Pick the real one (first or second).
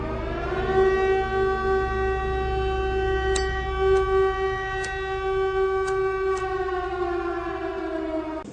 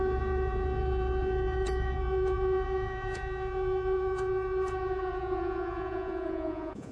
first